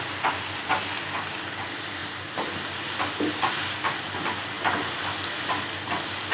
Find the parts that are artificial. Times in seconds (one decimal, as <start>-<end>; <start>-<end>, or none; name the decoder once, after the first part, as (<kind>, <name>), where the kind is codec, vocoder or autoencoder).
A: none